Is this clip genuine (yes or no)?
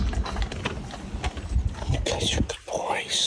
yes